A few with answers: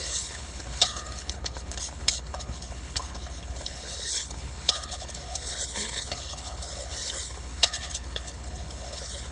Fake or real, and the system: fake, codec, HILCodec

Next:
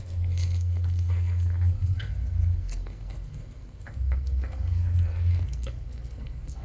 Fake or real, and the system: fake, codec, SNAC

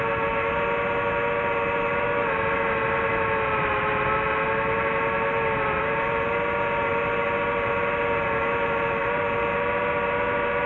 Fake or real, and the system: real